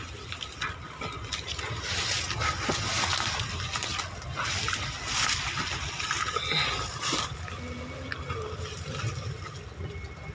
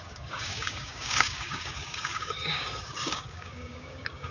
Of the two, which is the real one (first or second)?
first